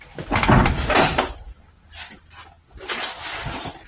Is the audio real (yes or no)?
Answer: yes